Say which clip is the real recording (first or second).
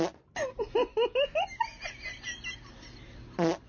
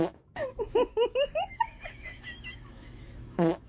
first